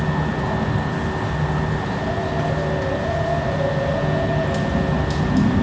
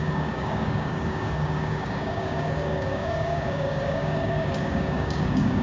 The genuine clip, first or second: first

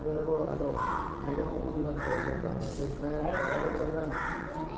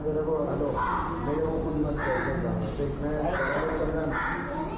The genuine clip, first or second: second